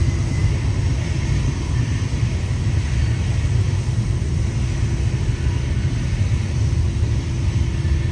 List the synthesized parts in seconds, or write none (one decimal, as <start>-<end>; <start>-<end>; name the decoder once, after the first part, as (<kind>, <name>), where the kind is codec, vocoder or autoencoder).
none